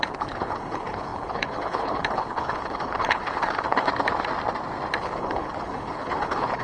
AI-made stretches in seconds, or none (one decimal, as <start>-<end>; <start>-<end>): 0.0-3.9; 5.0-6.6